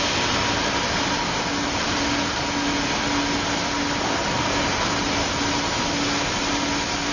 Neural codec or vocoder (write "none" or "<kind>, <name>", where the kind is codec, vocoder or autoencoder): none